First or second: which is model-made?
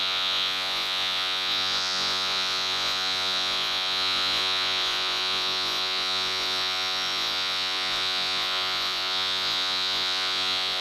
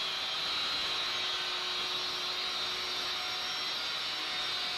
first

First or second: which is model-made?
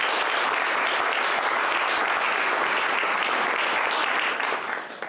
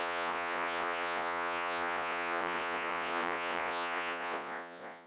second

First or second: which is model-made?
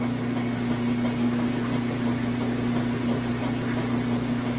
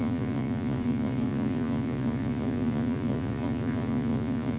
second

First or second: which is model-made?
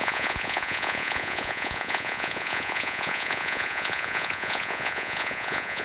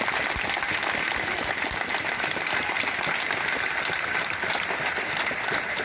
first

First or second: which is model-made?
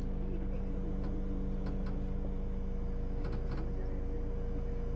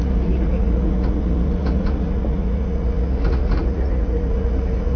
second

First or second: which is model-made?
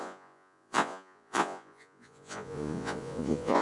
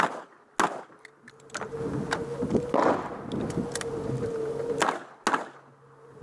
first